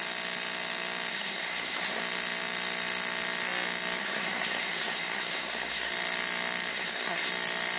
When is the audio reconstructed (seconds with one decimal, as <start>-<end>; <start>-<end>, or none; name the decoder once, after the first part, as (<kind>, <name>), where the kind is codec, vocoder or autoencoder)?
1.1-2.0 (codec, SNAC); 4.0-5.9; 6.7-7.3